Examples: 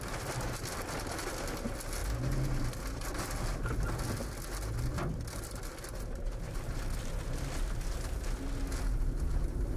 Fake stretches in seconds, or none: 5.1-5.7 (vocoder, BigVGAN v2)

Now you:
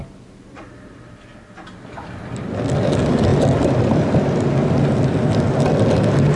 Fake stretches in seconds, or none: 3.3-5.0 (vocoder, BigVGAN v2)

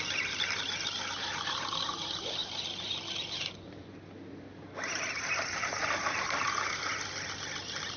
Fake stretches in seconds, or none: none

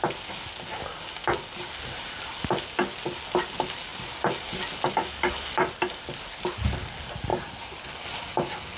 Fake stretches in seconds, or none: none

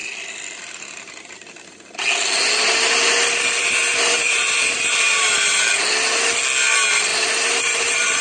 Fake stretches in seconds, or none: 3.6-5.6 (vocoder, BigVGAN v2); 7.1-8.2

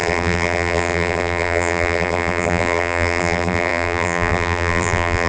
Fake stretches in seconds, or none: 0.0-5.3 (vocoder, BigVGAN v2)

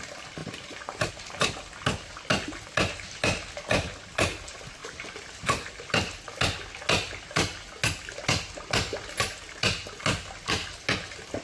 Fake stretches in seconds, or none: 0.4-1.1 (vocoder, BigVGAN v2); 4.8-5.8

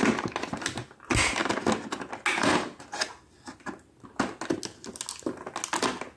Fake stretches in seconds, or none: none